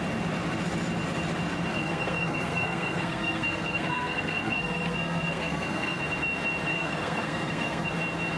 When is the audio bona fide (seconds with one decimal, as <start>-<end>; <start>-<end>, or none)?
0.0-1.7; 6.0-6.7; 7.9-8.4